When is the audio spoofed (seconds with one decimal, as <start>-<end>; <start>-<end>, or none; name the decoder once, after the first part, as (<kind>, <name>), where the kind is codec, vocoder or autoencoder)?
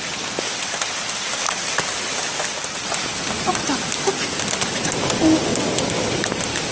none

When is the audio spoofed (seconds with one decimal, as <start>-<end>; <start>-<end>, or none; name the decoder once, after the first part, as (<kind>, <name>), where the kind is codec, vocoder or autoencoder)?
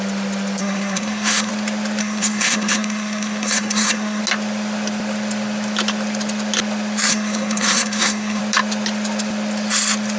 0.6-1.5 (codec, SNAC); 2.0-4.2; 7.1-8.4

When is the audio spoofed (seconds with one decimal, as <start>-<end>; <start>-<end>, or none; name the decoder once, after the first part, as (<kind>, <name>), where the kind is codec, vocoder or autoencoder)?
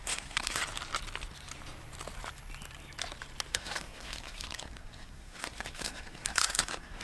0.0-0.6 (codec, SNAC); 3.5-7.0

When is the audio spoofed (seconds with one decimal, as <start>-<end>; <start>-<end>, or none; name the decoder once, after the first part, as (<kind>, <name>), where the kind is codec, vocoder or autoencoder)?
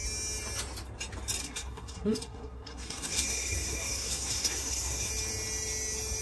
1.4-5.1 (codec, SNAC)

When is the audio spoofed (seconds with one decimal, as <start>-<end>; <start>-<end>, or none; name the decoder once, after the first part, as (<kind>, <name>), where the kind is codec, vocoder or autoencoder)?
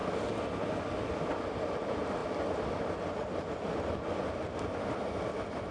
none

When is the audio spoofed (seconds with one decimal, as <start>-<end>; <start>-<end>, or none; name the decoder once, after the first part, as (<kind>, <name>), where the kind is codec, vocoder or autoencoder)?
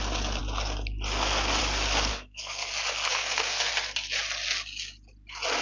2.1-2.7 (codec, SNAC); 3.1-3.7